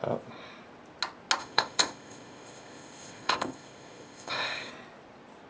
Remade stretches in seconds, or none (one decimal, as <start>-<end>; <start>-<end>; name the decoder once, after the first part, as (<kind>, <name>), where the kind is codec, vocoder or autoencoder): 1.4-4.7 (codec, ZipCodec)